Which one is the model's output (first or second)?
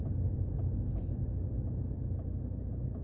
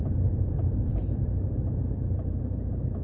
second